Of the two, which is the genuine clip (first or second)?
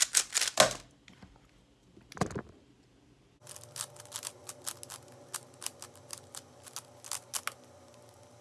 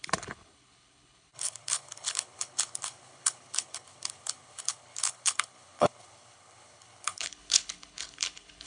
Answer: first